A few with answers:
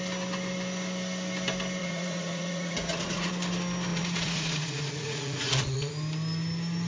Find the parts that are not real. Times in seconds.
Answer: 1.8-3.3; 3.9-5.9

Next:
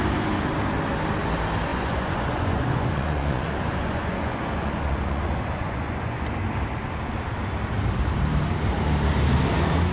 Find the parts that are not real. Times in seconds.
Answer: 1.7-6.3

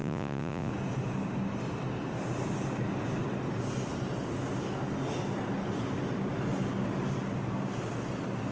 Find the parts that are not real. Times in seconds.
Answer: 0.0-0.7

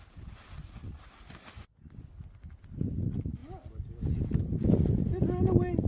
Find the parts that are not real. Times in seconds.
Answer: none